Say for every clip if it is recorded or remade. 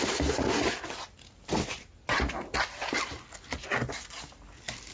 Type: recorded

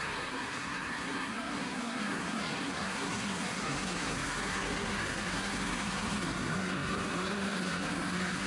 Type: remade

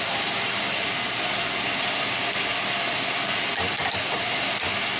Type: recorded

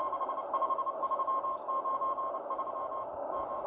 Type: recorded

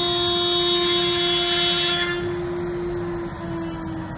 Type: recorded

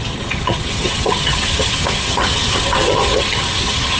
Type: remade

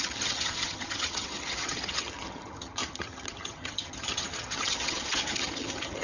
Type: remade